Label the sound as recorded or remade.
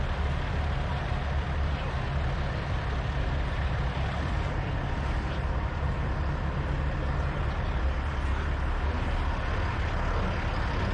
recorded